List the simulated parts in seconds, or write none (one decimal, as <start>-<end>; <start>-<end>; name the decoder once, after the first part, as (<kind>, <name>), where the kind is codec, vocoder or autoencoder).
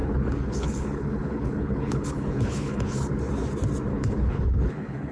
0.0-3.1 (codec, HILCodec); 3.9-5.1